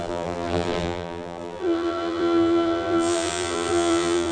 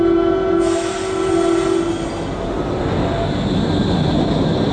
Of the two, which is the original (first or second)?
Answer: second